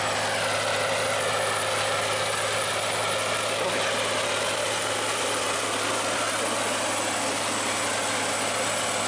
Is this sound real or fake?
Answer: real